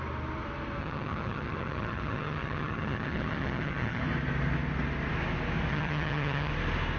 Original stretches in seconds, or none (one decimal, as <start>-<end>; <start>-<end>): 0.0-0.8; 4.0-5.7; 6.5-7.0